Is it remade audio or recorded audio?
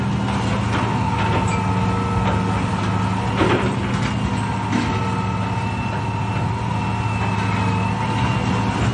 recorded